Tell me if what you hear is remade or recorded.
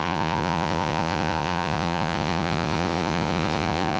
remade